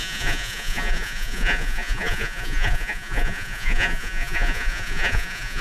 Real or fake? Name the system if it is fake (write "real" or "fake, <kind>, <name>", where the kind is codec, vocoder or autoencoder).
fake, vocoder, Vocos